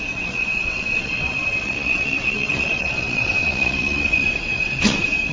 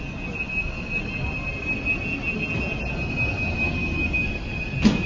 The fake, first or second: first